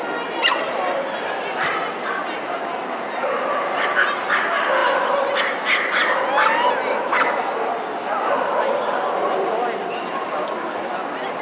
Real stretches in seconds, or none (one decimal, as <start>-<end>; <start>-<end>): 0.0-11.4